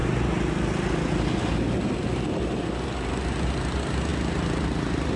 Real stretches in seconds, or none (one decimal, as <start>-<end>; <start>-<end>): 0.0-5.2